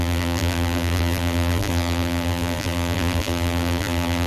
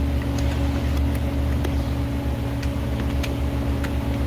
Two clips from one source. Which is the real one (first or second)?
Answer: second